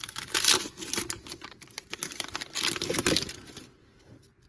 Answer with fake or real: fake